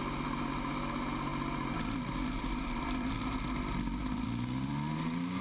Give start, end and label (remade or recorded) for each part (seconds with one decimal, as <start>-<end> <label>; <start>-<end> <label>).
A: 0.0-1.3 recorded; 1.3-3.1 remade; 3.1-4.0 recorded; 4.0-4.7 remade; 4.7-5.4 recorded